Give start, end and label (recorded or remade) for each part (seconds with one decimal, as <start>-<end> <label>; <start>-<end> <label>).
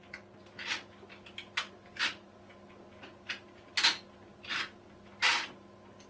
0.0-6.1 recorded